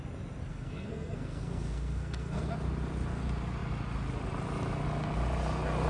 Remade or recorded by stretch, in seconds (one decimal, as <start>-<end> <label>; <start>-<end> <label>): 0.0-0.5 recorded; 0.5-2.5 remade; 2.5-5.9 recorded